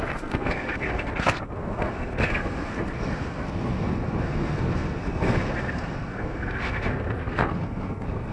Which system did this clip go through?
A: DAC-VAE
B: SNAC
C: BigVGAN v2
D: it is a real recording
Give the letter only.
B